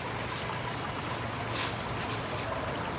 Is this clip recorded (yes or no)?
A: yes